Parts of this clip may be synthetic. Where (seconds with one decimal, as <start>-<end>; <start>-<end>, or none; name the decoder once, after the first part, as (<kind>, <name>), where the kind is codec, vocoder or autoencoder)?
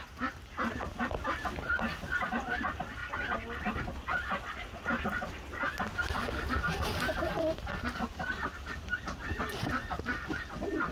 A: none